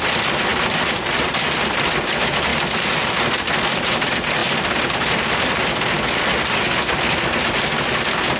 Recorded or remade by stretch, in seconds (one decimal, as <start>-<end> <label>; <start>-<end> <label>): 0.0-8.4 recorded

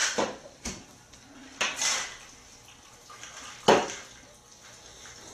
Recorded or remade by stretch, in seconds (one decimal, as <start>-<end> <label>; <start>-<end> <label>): 0.0-5.3 recorded

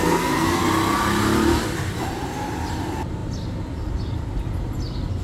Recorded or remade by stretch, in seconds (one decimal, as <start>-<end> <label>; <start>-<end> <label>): 0.0-0.6 remade; 0.6-5.2 recorded

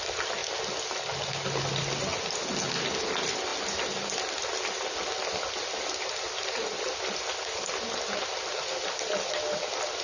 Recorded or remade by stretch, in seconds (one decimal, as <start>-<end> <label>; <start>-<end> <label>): 0.0-10.0 recorded

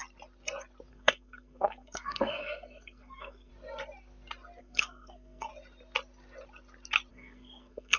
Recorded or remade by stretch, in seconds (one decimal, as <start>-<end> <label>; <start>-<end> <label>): 0.0-0.9 recorded; 0.9-3.5 remade; 3.5-4.6 recorded; 4.6-5.5 remade; 5.5-7.1 recorded; 7.1-8.0 remade